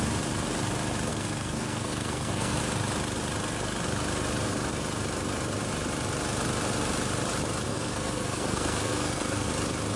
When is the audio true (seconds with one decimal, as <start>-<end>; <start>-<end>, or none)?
0.0-1.1; 2.6-7.7; 9.5-10.0